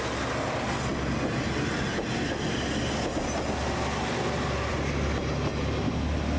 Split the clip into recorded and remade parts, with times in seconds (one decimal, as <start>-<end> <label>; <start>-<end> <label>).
0.0-6.4 recorded